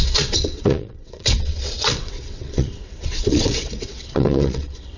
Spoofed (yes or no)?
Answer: yes